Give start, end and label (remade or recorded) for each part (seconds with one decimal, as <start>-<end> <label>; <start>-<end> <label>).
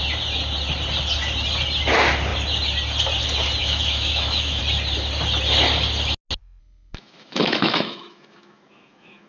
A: 0.0-3.6 recorded; 3.6-4.6 remade; 4.6-6.6 recorded; 6.6-9.3 remade